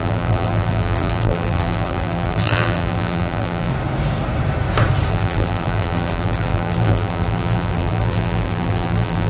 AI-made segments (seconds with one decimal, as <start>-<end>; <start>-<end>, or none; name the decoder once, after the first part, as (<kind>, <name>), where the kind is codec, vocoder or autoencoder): 0.0-3.7 (vocoder, BigVGAN v2); 5.1-9.3